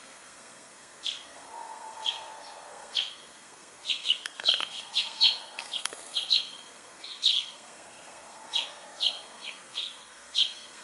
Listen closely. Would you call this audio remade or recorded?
remade